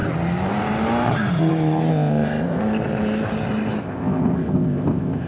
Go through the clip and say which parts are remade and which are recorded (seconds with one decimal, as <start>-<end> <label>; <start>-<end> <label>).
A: 0.0-1.9 recorded; 1.9-2.6 remade; 2.6-3.8 recorded; 3.8-5.3 remade

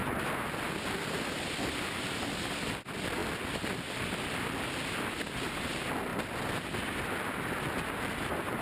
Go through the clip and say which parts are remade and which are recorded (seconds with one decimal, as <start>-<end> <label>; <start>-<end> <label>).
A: 0.0-0.9 recorded; 0.9-8.6 remade

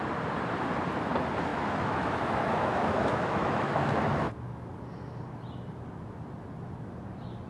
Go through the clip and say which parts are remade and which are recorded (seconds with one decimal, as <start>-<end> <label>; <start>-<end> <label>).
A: 0.0-1.5 recorded; 1.5-4.7 remade; 4.7-7.5 recorded

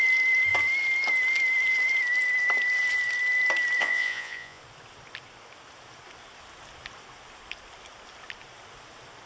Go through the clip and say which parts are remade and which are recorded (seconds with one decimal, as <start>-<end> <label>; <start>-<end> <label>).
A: 0.0-3.8 recorded; 3.8-4.6 remade; 4.6-9.3 recorded

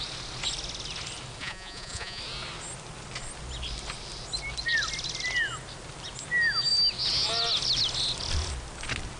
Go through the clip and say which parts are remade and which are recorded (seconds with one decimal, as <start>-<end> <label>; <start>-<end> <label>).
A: 0.0-1.4 recorded; 1.4-2.2 remade; 2.2-9.2 recorded

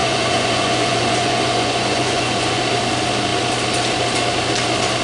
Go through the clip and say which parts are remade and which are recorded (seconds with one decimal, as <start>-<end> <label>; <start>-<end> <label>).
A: 0.0-2.6 remade; 2.6-5.0 recorded